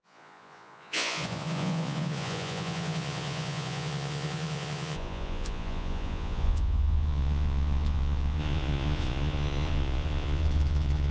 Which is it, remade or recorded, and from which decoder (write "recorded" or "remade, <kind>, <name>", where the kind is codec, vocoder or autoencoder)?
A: remade, vocoder, Vocos